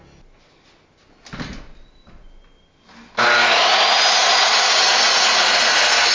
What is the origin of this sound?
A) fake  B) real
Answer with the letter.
B